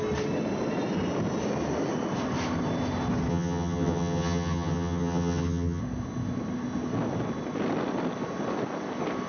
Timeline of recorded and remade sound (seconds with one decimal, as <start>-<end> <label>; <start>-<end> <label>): 0.0-3.3 recorded; 3.3-5.8 remade; 5.8-9.3 recorded